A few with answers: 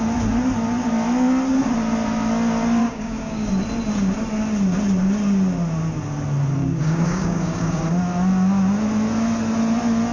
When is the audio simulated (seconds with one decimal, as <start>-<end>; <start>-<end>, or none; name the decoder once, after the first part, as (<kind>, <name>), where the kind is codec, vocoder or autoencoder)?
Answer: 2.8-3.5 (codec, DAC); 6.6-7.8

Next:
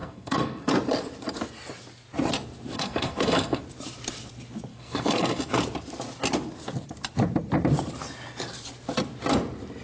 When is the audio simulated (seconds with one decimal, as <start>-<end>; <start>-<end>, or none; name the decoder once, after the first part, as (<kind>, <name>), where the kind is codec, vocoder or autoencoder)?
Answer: 0.0-0.7 (codec, SNAC); 2.7-3.6; 4.7-5.4

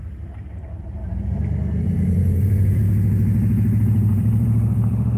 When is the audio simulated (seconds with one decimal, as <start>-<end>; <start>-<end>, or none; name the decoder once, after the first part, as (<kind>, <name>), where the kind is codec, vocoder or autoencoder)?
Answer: 0.0-1.0 (vocoder, BigVGAN v2); 1.8-2.8; 3.8-5.2

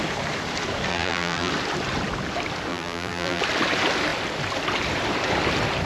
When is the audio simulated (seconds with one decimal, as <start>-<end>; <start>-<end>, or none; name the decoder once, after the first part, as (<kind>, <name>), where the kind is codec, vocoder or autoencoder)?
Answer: 0.9-1.5 (vocoder, BigVGAN v2); 2.7-3.4